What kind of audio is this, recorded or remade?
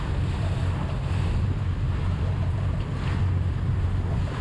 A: remade